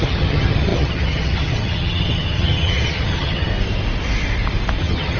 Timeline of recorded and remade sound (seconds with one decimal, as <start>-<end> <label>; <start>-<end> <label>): 0.0-3.5 remade; 3.5-4.8 recorded; 4.8-5.2 remade